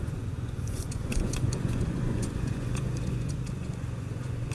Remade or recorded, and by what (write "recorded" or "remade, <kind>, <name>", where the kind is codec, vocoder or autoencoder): remade, vocoder, Vocos